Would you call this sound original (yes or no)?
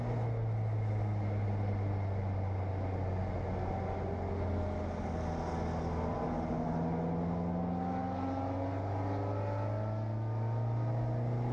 yes